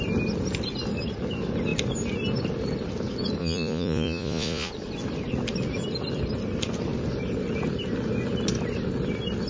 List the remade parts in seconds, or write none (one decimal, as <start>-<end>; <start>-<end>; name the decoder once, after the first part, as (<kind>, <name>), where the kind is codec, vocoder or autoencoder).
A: 3.4-4.7 (vocoder, Vocos)